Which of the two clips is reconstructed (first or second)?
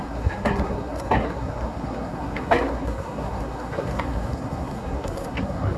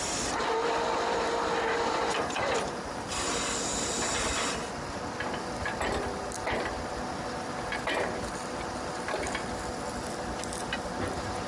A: first